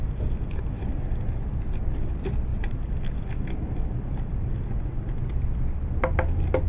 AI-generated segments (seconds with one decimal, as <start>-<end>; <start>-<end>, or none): none